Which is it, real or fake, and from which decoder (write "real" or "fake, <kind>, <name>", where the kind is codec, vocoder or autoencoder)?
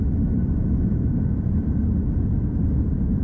fake, vocoder, BigVGAN v2